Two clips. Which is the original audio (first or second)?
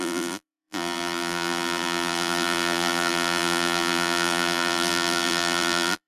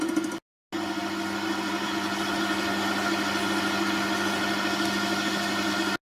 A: second